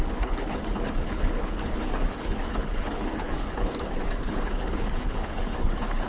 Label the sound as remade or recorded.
remade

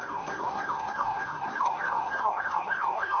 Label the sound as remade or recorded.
remade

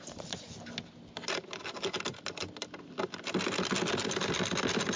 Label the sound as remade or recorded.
recorded